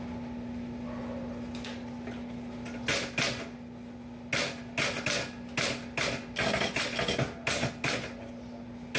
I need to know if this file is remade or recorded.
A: recorded